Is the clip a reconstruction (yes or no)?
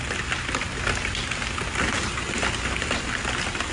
no